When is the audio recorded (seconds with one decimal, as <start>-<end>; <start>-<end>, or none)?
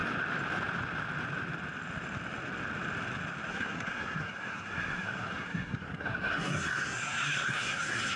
0.0-3.5